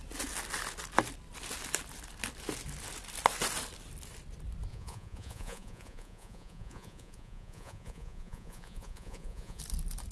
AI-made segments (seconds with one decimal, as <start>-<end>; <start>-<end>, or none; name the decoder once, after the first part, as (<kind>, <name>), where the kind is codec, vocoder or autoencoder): 4.7-9.6 (vocoder, Vocos)